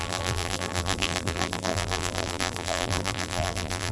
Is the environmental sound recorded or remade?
remade